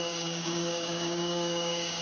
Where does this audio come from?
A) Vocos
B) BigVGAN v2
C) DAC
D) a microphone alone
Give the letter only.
C